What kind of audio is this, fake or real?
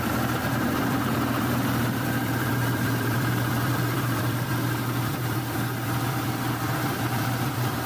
fake